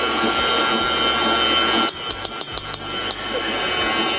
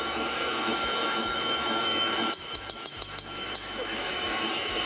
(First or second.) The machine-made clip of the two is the second